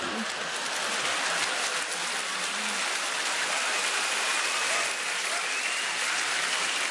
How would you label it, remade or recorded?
recorded